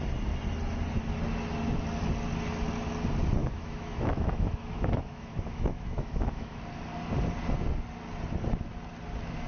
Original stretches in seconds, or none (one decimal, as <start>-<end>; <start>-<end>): 0.0-3.4; 6.6-9.5